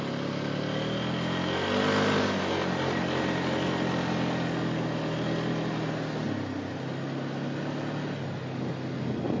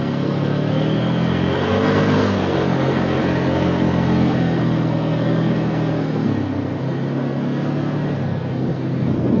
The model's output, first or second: second